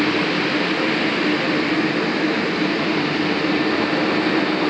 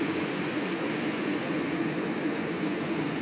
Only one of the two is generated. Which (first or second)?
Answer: second